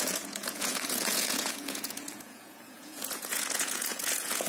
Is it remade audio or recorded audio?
remade